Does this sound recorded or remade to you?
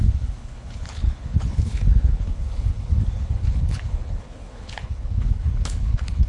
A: remade